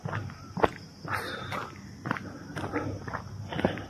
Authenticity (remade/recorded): recorded